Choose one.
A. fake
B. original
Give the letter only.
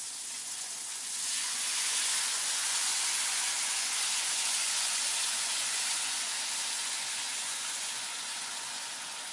A